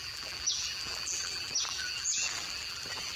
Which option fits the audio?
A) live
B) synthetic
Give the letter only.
B